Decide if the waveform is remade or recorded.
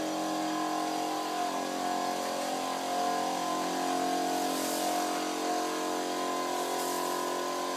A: recorded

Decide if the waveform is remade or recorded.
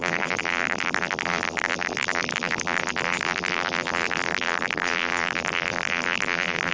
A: remade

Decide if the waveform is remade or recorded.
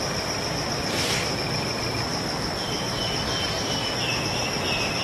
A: recorded